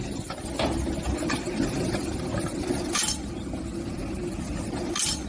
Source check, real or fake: real